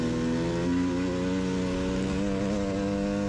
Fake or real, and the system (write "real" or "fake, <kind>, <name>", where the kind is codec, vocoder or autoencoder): real